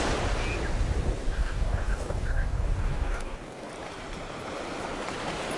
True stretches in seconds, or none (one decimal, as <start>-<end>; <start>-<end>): 0.0-1.3; 3.7-5.6

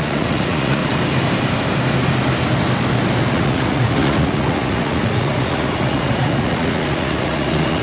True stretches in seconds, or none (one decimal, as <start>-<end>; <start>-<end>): 0.8-3.3

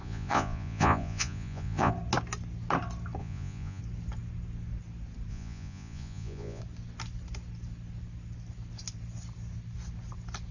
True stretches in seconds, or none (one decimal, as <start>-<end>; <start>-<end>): 1.9-3.2; 3.8-5.3; 6.6-10.5

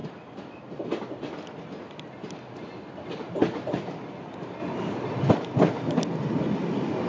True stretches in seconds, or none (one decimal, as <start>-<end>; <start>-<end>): 0.0-7.1